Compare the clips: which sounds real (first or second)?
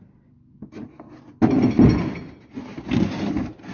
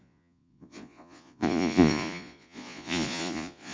first